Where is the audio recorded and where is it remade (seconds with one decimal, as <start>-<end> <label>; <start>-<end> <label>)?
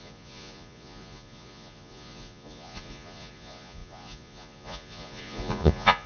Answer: 0.0-6.1 remade